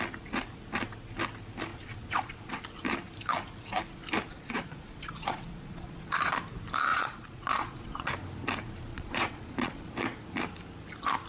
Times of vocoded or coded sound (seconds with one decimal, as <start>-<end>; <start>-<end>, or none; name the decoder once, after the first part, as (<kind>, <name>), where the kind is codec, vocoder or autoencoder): 1.7-2.6 (vocoder, Vocos); 4.3-6.3; 6.9-8.1; 8.9-9.9